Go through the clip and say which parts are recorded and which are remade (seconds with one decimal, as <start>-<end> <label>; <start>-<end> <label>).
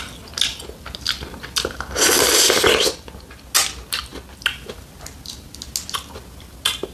0.0-6.9 recorded